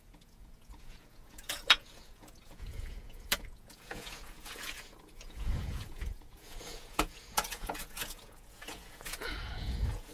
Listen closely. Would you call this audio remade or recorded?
remade